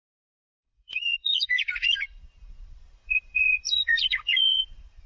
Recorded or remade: remade